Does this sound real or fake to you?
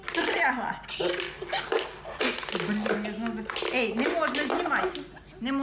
real